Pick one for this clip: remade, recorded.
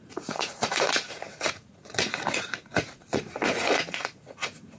remade